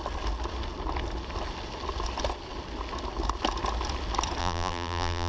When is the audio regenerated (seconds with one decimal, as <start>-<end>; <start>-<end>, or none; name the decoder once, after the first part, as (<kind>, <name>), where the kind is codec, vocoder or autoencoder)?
4.4-5.3 (vocoder, BigVGAN v2)